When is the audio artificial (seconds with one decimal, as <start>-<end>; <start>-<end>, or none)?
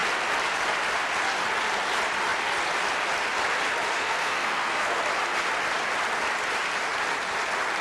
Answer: 4.0-5.0